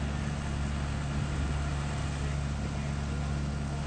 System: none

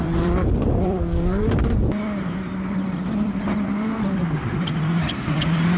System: vocoder, BigVGAN v2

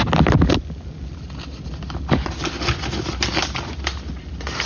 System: none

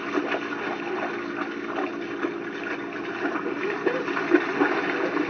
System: none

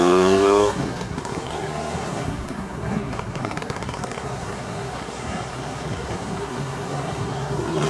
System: codec, SNAC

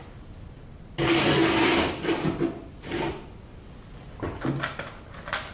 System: none